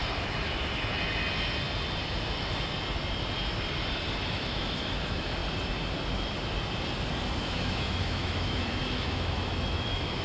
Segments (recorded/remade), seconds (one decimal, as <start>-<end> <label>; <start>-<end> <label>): 0.0-4.3 recorded; 4.3-5.4 remade; 5.4-7.4 recorded; 7.4-10.2 remade